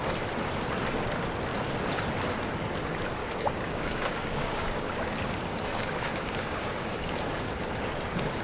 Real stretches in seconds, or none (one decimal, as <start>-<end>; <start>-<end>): 0.0-3.2